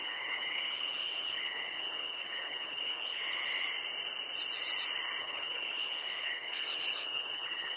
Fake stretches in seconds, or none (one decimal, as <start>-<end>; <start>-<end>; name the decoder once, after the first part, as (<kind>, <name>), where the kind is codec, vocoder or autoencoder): 0.0-3.2 (codec, HILCodec); 5.2-7.8